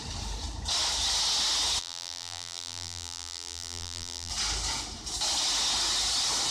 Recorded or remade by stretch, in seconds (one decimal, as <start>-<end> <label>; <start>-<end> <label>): 0.0-1.8 recorded; 1.8-4.3 remade; 4.3-6.5 recorded